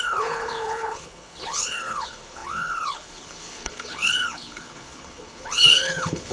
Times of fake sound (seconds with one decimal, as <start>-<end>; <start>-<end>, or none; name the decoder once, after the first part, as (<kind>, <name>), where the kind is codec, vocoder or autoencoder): 0.0-6.3 (codec, HILCodec)